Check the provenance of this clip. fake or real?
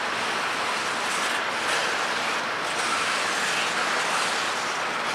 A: real